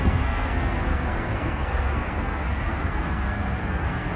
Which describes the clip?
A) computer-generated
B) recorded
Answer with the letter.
A